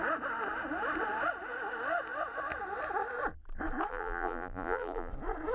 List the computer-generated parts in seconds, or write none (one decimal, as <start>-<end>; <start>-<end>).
3.9-5.1